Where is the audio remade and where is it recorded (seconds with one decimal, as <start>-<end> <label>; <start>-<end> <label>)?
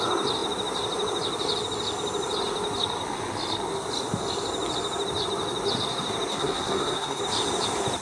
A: 0.0-6.3 recorded; 6.3-7.2 remade; 7.2-8.0 recorded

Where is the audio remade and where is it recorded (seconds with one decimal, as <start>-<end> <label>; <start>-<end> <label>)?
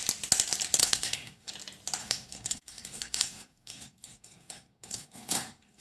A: 0.0-0.8 recorded; 0.8-1.5 remade; 1.5-2.0 recorded; 2.0-5.8 remade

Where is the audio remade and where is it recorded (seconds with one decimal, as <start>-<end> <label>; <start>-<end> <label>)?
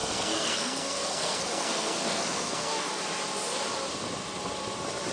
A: 0.0-3.0 remade; 3.0-5.1 recorded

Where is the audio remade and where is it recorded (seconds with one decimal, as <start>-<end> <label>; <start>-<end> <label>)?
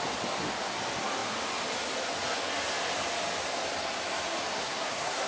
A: 0.0-4.6 recorded; 4.6-5.3 remade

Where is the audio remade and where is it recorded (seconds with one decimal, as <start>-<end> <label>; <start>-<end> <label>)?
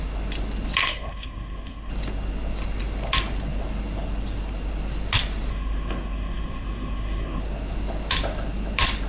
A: 0.0-0.8 recorded; 0.8-1.9 remade; 1.9-5.5 recorded; 5.5-7.4 remade; 7.4-9.1 recorded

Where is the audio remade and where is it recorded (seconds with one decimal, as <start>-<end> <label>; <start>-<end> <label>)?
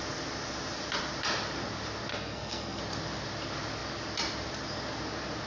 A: 0.0-2.1 recorded; 2.1-2.8 remade; 2.8-5.5 recorded